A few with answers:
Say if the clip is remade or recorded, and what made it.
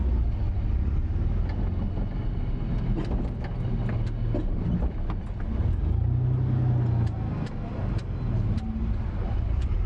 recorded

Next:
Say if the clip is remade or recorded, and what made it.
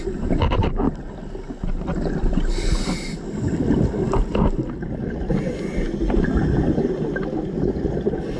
recorded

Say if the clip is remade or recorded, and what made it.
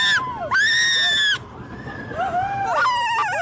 recorded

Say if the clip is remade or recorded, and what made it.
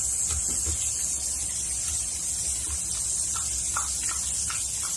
recorded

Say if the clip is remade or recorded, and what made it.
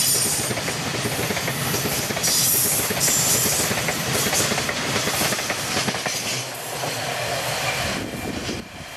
recorded